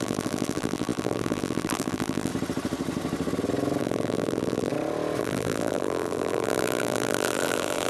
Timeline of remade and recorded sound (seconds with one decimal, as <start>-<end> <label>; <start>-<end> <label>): 0.0-2.3 remade; 2.3-3.8 recorded; 3.8-4.7 remade; 4.7-5.2 recorded; 5.2-7.9 remade